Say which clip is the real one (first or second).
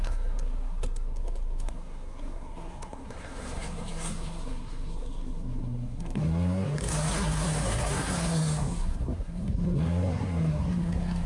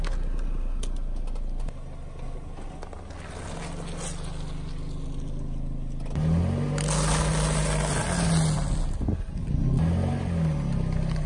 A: second